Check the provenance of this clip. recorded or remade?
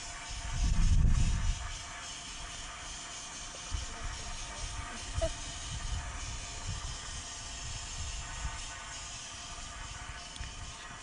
recorded